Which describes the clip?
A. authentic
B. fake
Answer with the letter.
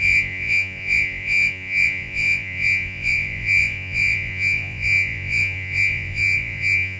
B